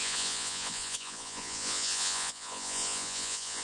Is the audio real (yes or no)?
no